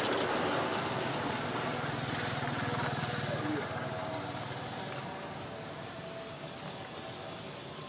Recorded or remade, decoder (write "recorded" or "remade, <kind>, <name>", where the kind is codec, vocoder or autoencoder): recorded